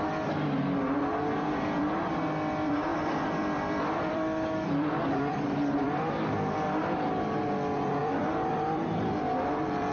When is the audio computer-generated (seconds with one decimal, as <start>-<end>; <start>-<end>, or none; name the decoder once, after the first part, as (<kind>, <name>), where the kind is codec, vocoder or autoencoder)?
2.9-6.1 (vocoder, BigVGAN v2); 8.0-9.9